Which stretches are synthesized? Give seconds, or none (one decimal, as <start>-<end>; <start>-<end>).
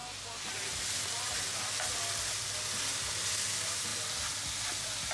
none